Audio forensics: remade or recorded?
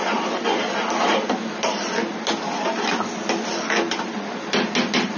recorded